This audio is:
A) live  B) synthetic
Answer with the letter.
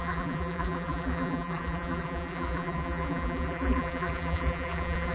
B